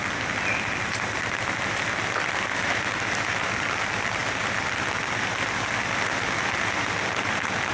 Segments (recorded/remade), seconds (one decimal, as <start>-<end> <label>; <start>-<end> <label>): 0.0-7.7 recorded